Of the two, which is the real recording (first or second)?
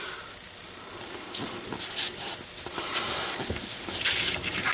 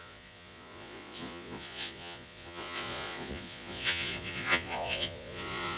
first